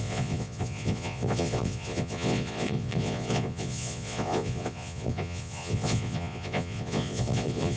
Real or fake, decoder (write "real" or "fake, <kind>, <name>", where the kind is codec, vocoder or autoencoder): fake, vocoder, Vocos